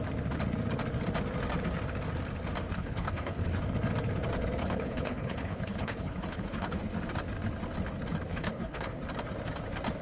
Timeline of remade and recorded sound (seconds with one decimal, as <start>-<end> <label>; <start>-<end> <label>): 0.0-2.7 recorded; 2.7-3.5 remade; 3.5-4.6 recorded; 4.6-6.8 remade; 6.8-8.3 recorded; 8.3-9.0 remade; 9.0-10.0 recorded